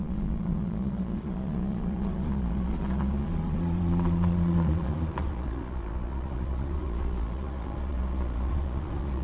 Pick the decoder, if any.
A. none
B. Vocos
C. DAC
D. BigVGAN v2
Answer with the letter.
B